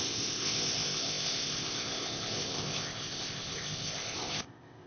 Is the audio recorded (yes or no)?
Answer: no